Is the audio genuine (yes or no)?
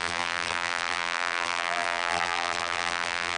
no